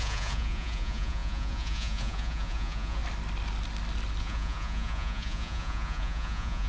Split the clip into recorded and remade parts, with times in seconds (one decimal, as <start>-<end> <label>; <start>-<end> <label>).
0.0-3.0 remade; 3.0-4.2 recorded; 4.2-6.7 remade